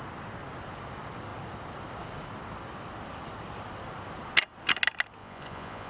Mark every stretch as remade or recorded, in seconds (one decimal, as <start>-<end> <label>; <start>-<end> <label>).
0.0-5.2 recorded; 5.2-5.9 remade